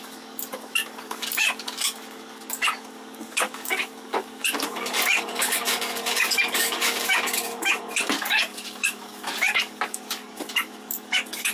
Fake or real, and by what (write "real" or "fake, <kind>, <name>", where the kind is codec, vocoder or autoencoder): fake, codec, DAC